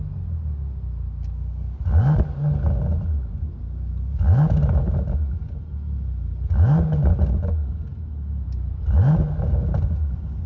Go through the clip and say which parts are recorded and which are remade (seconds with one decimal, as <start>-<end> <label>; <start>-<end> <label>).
0.0-7.9 recorded; 7.9-8.8 remade; 8.8-10.5 recorded